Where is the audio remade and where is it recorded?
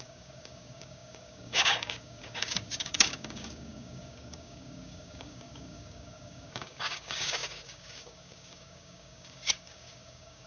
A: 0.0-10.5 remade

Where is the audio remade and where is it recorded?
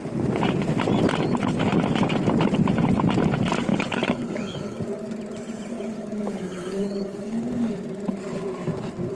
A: 0.0-3.7 recorded; 3.7-4.8 remade; 4.8-5.7 recorded; 5.7-7.7 remade; 7.7-9.2 recorded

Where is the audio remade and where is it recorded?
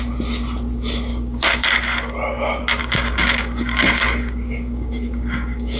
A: 0.0-1.1 recorded; 1.1-1.6 remade; 1.6-2.8 recorded; 2.8-5.8 remade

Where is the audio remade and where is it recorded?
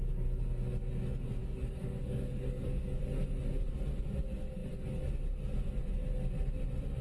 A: 0.0-1.4 recorded; 1.4-3.0 remade; 3.0-7.0 recorded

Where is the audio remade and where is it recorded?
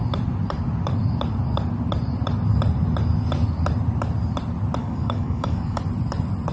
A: 0.0-4.8 recorded; 4.8-5.8 remade; 5.8-6.5 recorded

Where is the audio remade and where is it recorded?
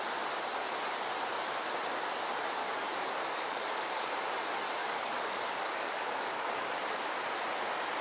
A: 0.0-2.6 recorded; 2.6-4.1 remade; 4.1-4.8 recorded; 4.8-7.2 remade; 7.2-8.0 recorded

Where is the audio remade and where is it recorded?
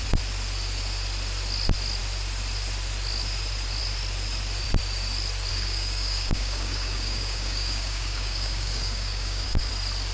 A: 0.0-5.5 recorded; 5.5-9.7 remade; 9.7-10.1 recorded